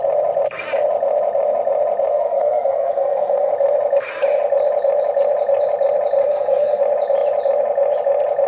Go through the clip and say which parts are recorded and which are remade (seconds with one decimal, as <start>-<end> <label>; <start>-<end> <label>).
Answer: 0.0-2.1 recorded; 2.1-3.5 remade; 3.5-6.2 recorded; 6.2-6.8 remade; 6.8-8.5 recorded